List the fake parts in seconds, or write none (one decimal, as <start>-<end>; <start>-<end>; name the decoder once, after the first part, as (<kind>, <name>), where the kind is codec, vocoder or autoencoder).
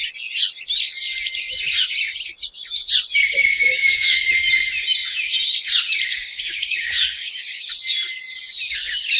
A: 3.5-4.3 (codec, DAC); 6.1-7.7